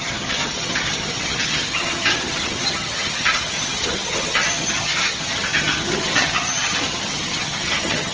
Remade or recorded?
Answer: remade